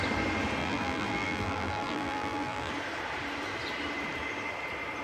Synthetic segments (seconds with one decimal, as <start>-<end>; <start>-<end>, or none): 0.6-2.7